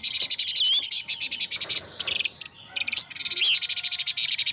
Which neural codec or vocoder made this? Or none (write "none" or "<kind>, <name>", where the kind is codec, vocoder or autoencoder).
none